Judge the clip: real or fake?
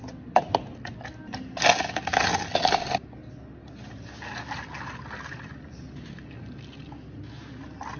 real